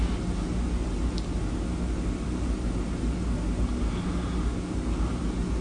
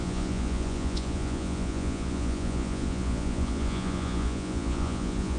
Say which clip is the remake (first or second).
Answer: second